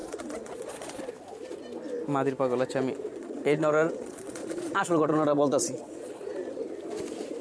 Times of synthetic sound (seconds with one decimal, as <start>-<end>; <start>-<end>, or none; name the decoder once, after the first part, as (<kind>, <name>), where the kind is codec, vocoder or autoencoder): 0.0-1.0 (vocoder, Vocos); 3.1-6.6